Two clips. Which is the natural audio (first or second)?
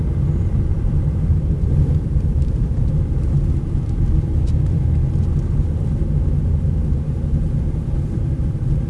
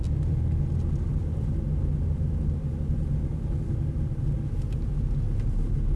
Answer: second